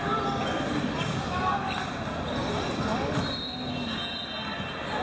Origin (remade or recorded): recorded